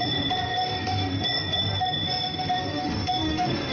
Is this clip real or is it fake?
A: fake